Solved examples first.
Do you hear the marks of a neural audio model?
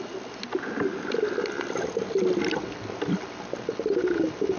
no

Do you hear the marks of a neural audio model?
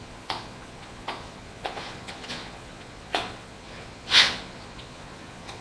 yes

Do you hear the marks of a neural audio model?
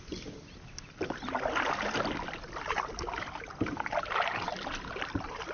no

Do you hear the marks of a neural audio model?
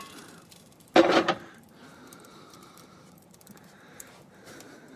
yes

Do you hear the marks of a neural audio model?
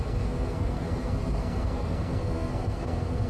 yes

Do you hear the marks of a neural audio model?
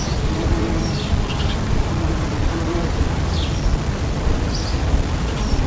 yes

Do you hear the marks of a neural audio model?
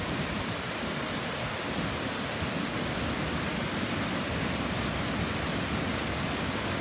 no